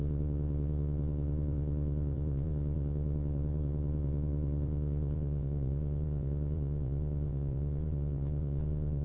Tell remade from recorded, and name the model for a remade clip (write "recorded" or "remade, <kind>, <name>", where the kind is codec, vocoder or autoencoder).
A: remade, vocoder, Vocos